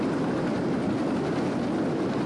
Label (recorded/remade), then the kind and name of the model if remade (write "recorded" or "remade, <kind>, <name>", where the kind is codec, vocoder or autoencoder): remade, vocoder, BigVGAN v2